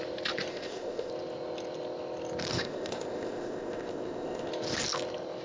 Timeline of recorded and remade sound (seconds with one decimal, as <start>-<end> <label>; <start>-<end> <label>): 0.0-0.5 recorded; 0.5-1.1 remade; 1.1-2.5 recorded; 2.5-4.5 remade; 4.5-5.4 recorded